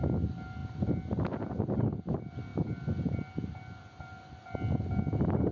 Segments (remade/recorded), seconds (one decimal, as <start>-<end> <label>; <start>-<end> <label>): 0.0-5.5 recorded